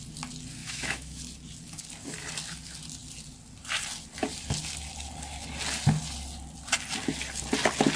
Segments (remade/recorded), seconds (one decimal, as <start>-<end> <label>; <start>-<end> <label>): 0.0-0.6 recorded; 0.6-1.2 remade; 1.2-8.0 recorded

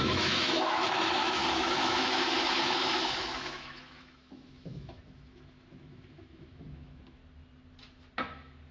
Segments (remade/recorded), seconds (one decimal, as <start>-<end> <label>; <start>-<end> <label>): 0.0-7.2 remade; 7.2-8.7 recorded

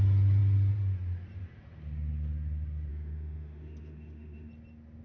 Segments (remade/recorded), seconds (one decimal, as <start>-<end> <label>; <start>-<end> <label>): 0.0-2.9 recorded; 2.9-4.5 remade; 4.5-5.0 recorded

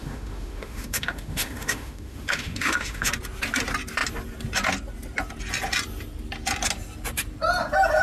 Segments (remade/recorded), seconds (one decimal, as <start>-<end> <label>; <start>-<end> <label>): 0.0-3.1 remade; 3.1-8.0 recorded

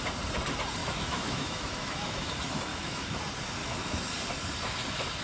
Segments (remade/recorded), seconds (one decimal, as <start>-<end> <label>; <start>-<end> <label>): 0.0-0.8 recorded; 0.8-2.3 remade; 2.3-2.7 recorded; 2.7-3.2 remade; 3.2-3.6 recorded; 3.6-4.1 remade; 4.1-5.2 recorded

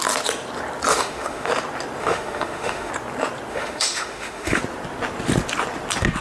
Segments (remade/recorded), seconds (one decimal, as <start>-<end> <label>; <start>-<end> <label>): 0.0-0.9 recorded; 0.9-1.5 remade; 1.5-2.0 recorded; 2.0-2.9 remade; 2.9-3.5 recorded; 3.5-4.6 remade; 4.6-6.2 recorded